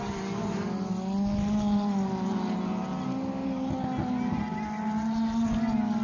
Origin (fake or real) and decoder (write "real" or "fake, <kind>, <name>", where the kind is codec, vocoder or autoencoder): real